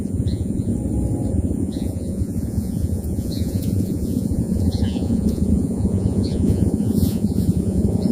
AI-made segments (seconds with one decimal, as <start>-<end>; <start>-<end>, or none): 0.0-0.7; 1.3-8.1